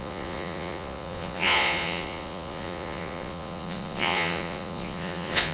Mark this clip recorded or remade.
remade